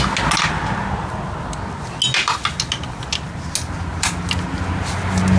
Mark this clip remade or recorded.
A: recorded